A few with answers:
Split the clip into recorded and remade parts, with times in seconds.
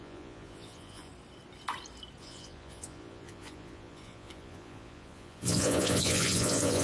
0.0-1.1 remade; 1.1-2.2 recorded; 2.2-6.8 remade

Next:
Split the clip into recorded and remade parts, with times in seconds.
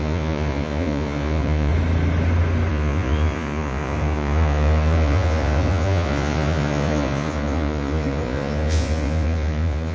0.0-1.7 remade; 1.7-2.7 recorded; 2.7-9.9 remade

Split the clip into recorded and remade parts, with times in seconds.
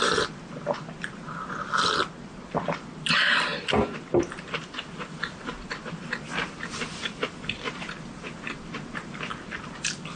0.0-3.5 remade; 3.5-4.2 recorded; 4.2-10.2 remade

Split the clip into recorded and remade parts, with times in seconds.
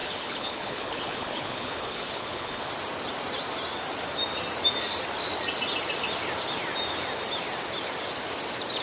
0.0-2.7 remade; 2.7-8.8 recorded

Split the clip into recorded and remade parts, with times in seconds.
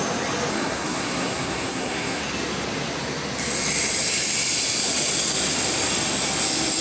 0.0-0.5 recorded; 0.5-2.2 remade; 2.2-6.8 recorded